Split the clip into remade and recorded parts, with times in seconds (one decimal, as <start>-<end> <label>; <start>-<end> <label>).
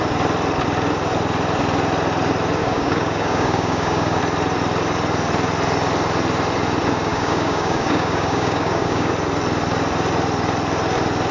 0.0-2.6 recorded; 2.6-4.2 remade; 4.2-7.1 recorded; 7.1-9.1 remade; 9.1-11.3 recorded